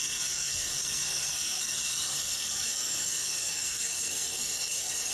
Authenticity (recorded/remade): remade